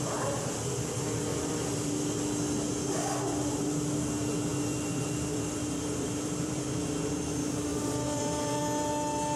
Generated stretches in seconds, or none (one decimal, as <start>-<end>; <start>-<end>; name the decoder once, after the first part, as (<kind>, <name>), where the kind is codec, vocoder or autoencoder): 1.3-1.9 (vocoder, BigVGAN v2); 4.5-7.1; 7.7-8.6